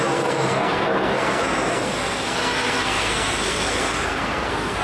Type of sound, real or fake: fake